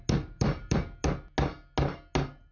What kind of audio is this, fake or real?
real